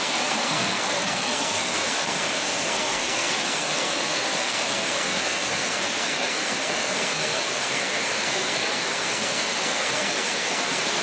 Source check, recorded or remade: remade